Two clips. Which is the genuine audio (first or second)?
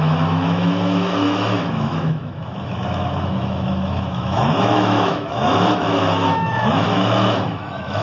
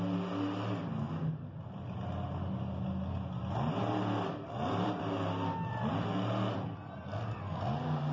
second